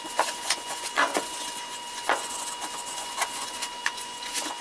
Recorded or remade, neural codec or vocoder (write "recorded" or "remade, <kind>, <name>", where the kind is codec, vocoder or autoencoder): remade, vocoder, Vocos